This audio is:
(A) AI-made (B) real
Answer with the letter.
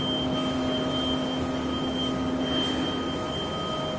B